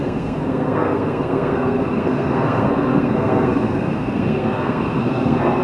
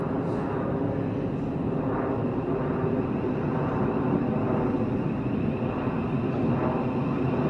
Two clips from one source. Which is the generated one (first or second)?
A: first